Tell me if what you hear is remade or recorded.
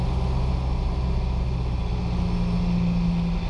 recorded